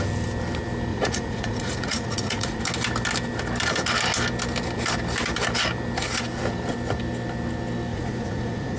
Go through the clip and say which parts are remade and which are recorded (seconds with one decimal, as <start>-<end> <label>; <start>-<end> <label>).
0.0-0.9 recorded; 0.9-2.6 remade; 2.6-7.9 recorded; 7.9-8.8 remade